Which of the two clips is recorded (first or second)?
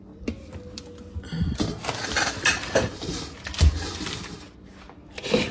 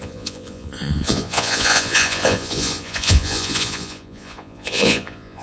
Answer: first